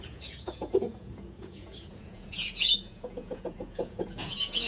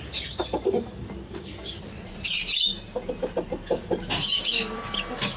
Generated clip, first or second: first